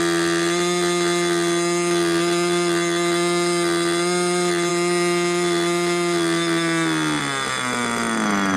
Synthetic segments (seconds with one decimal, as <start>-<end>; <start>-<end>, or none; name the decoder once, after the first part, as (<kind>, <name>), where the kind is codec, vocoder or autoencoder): none